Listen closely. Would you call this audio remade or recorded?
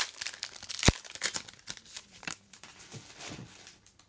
remade